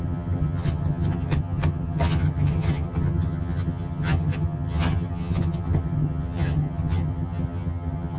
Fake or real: fake